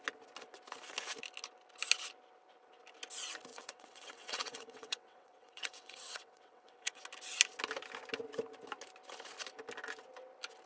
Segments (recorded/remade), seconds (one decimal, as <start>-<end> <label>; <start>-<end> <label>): 0.0-3.5 recorded; 3.5-7.0 remade; 7.0-10.7 recorded